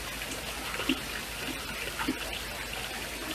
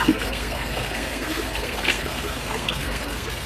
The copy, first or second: second